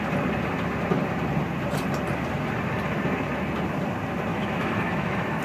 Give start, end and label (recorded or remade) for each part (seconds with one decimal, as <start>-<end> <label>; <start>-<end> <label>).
0.0-4.3 recorded; 4.3-5.4 remade